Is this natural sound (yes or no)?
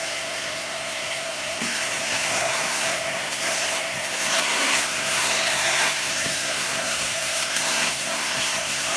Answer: no